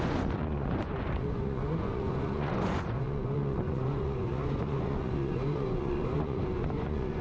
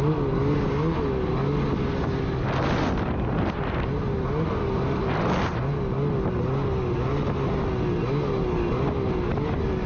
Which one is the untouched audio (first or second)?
second